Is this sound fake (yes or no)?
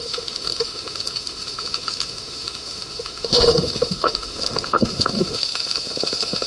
yes